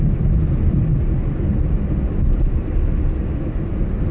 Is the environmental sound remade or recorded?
recorded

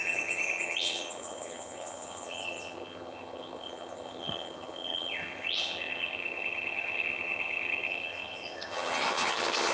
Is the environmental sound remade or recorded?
remade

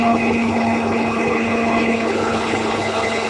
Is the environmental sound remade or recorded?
remade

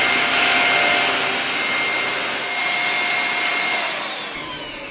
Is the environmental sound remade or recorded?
recorded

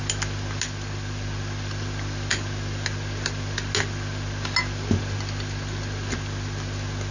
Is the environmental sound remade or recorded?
recorded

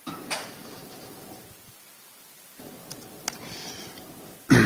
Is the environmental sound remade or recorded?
recorded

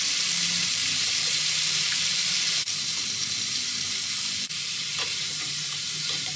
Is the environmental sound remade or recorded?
remade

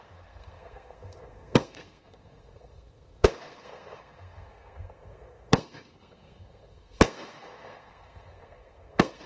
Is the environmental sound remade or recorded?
remade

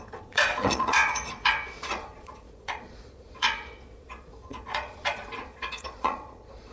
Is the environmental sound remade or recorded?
remade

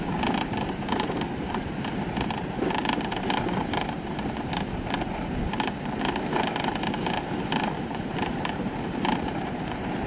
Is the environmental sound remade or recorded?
remade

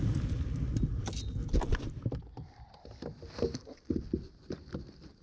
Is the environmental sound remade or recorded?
recorded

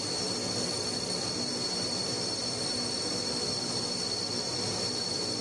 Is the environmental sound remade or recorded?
recorded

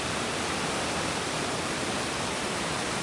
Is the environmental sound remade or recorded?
remade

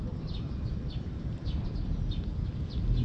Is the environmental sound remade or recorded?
recorded